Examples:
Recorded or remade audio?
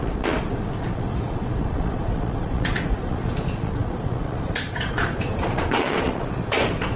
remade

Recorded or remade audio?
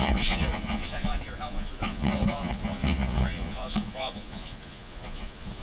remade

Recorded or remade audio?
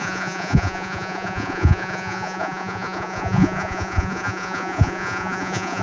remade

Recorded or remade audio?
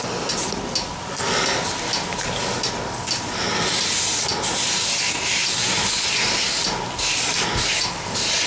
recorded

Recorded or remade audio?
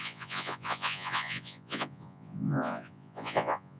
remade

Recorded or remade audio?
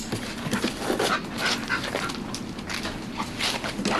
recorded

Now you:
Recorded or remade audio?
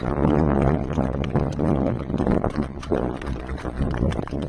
remade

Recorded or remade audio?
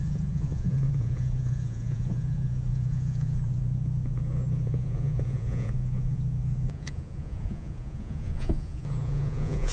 remade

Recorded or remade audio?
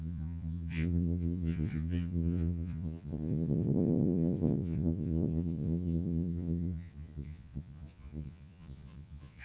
remade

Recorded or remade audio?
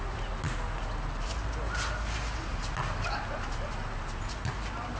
recorded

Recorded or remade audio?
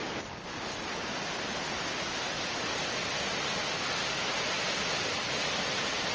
recorded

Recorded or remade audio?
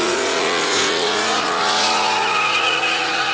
remade